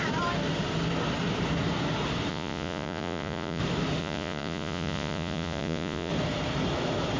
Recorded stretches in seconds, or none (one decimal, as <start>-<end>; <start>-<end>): 0.0-2.3; 3.6-4.0; 6.1-7.2